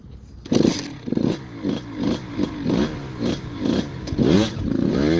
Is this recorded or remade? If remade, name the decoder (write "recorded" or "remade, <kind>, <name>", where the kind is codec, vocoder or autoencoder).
recorded